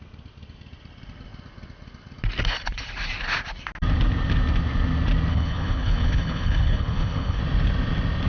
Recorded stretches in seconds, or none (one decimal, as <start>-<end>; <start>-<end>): 0.0-5.3; 7.4-8.3